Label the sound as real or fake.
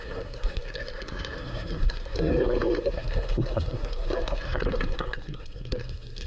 fake